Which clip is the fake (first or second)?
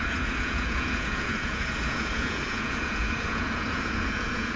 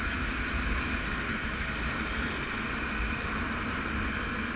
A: first